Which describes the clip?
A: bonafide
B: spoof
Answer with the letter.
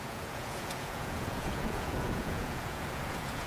B